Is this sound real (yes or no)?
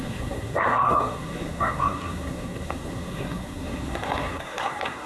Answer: no